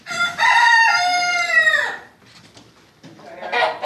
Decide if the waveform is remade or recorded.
remade